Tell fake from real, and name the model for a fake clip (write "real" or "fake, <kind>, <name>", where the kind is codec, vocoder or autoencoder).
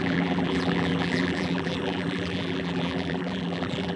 fake, vocoder, BigVGAN v2